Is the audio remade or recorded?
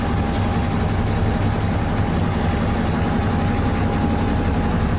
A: recorded